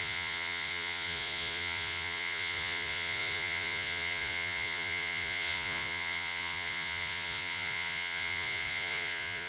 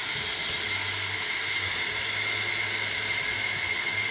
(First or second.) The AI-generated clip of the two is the first